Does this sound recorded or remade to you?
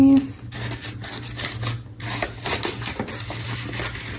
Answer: recorded